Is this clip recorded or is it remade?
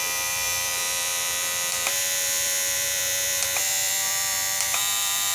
remade